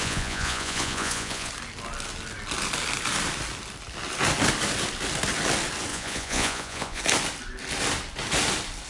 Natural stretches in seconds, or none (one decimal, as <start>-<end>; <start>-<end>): 1.5-5.9; 7.0-8.9